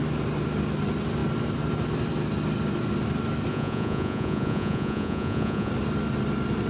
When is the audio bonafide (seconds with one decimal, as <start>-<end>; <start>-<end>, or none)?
0.0-3.5; 5.7-6.7

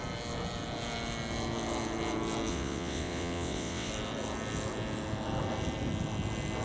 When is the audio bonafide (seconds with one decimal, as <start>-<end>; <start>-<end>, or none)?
0.0-2.5; 3.9-6.6

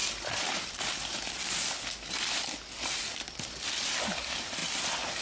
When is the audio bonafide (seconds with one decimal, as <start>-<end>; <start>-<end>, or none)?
0.0-5.2

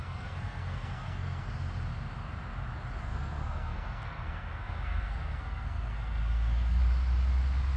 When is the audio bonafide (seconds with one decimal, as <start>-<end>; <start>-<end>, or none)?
1.5-3.1; 6.8-7.8

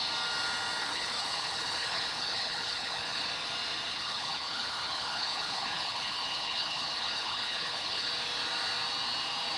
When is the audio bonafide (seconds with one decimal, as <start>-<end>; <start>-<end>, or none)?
0.0-0.8; 3.3-3.9; 8.1-9.6

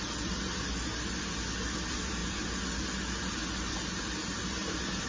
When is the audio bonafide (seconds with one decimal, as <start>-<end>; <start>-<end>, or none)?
0.5-1.3; 2.2-3.7